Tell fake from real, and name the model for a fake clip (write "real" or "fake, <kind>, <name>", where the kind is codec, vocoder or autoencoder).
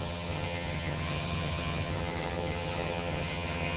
fake, vocoder, HiFi-GAN